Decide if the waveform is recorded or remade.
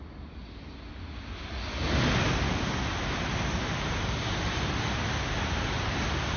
recorded